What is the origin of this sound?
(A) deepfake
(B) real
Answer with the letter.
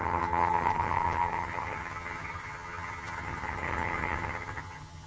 A